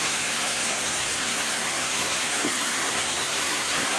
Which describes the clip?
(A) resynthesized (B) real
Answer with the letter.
A